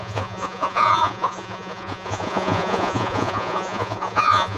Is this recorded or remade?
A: remade